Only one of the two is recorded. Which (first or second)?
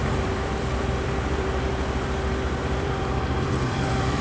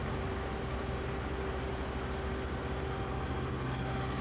second